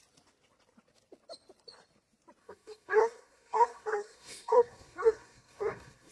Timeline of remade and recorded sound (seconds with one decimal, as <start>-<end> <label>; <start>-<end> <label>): 0.0-2.4 recorded; 2.4-6.1 remade